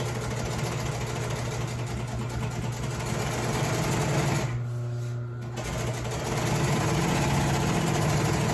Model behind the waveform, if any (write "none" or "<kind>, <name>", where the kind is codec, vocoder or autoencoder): none